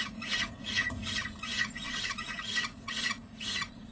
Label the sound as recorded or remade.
remade